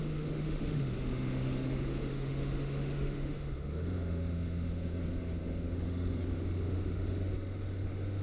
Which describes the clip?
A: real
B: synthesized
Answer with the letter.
B